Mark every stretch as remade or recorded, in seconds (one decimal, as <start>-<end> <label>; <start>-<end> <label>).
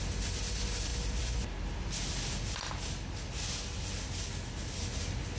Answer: 0.0-5.4 recorded